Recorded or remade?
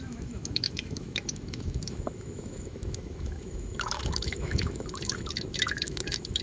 remade